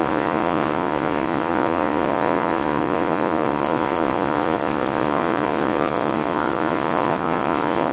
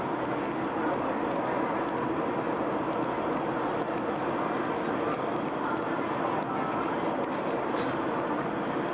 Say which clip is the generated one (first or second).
first